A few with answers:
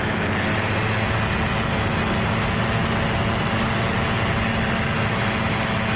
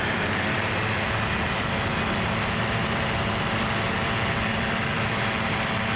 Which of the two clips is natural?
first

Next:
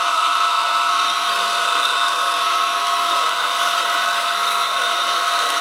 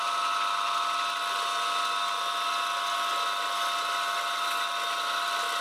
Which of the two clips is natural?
second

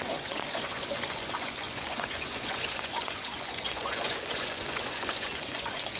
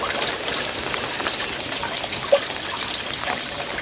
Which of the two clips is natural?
second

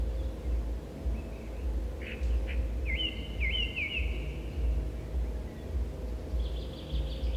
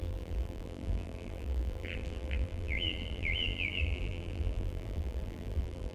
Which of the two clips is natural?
first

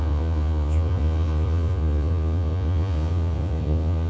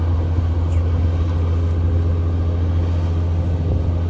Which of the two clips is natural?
second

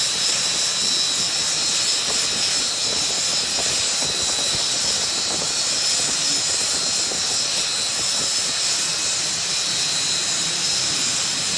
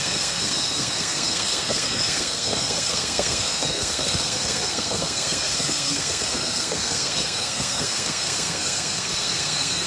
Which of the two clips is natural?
first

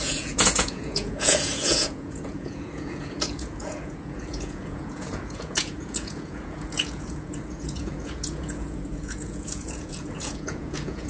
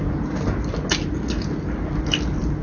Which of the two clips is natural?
second